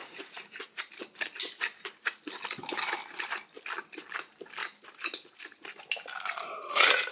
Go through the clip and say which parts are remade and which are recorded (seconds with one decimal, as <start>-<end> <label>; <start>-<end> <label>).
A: 0.0-0.9 remade; 0.9-4.6 recorded; 4.6-5.4 remade; 5.4-7.1 recorded